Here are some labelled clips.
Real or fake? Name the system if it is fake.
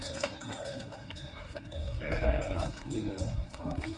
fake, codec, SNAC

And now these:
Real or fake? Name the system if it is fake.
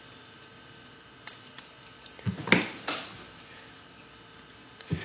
real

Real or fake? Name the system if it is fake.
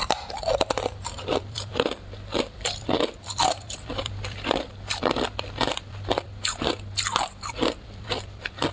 fake, vocoder, BigVGAN v2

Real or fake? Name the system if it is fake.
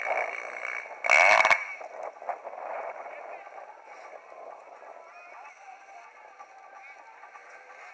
real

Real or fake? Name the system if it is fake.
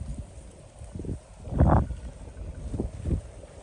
real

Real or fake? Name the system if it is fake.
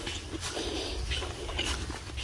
real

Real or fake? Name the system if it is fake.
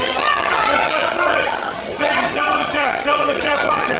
fake, vocoder, HiFi-GAN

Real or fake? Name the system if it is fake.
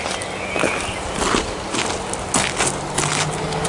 real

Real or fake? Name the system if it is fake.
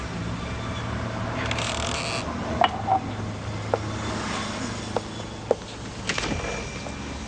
real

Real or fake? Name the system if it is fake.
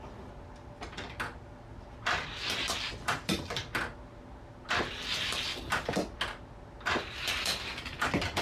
real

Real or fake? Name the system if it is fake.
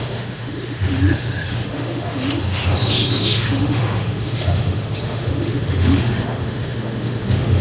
fake, autoencoder, DAC-VAE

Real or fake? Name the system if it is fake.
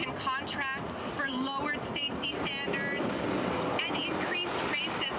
real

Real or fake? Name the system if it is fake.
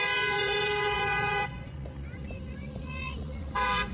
fake, vocoder, Vocos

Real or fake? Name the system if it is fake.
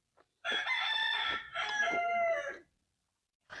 real